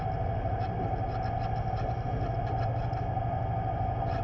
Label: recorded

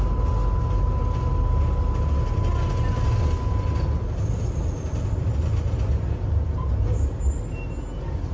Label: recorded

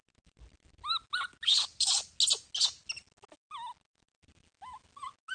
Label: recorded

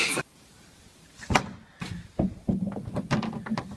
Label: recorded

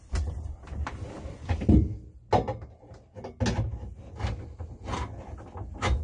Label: recorded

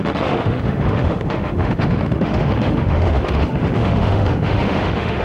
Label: remade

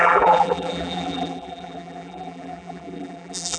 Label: remade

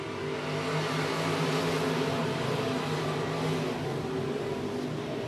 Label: recorded